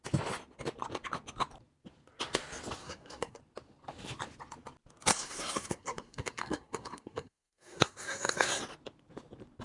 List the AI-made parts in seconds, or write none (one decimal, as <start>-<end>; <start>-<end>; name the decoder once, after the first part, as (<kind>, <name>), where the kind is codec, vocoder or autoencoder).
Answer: 2.8-3.4 (codec, SNAC); 5.1-8.6